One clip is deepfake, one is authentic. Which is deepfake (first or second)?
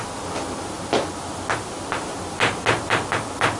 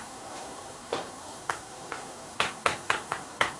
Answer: second